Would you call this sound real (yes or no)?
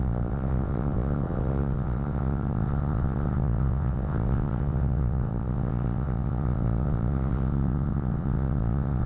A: no